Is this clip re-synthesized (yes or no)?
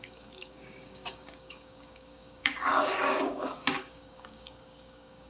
yes